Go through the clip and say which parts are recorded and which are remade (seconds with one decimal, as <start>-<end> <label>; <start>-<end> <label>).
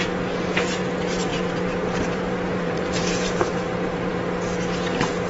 0.0-1.3 recorded; 1.3-4.2 remade; 4.2-5.3 recorded